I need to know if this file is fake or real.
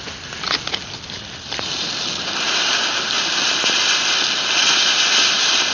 real